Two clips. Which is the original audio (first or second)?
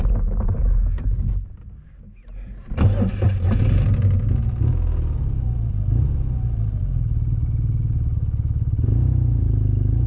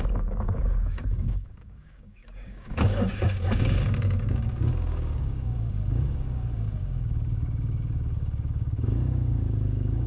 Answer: first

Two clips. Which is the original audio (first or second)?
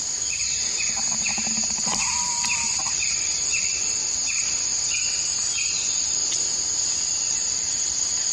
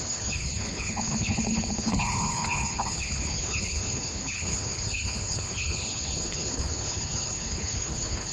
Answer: first